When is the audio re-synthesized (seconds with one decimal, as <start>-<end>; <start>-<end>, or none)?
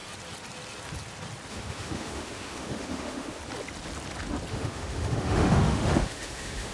1.5-3.4; 4.5-6.7